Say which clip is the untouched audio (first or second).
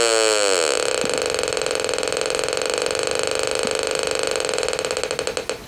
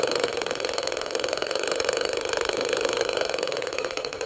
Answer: first